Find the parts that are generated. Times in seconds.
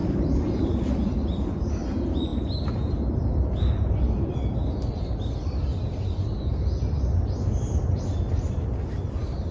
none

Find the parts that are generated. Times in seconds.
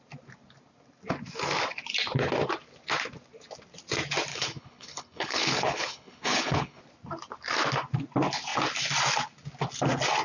4.3-6.8 (codec, HILCodec)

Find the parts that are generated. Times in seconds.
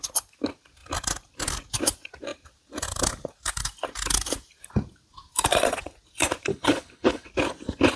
6.5-7.3 (codec, HILCodec)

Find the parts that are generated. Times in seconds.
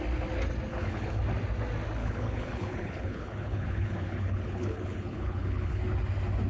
0.7-1.2 (codec, HILCodec); 2.0-5.8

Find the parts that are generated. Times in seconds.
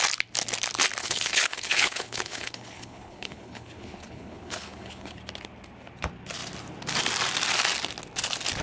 1.0-5.2 (codec, HILCodec)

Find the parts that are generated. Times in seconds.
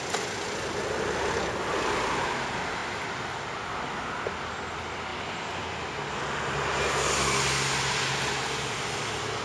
none